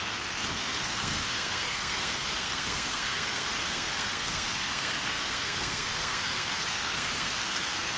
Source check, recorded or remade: remade